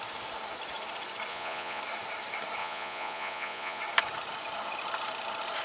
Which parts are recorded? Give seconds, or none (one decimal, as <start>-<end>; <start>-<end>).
0.0-1.3; 1.8-2.6; 3.8-5.6